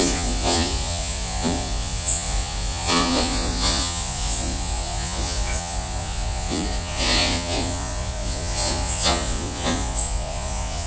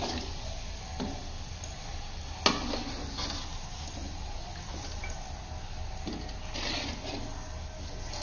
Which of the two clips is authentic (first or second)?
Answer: second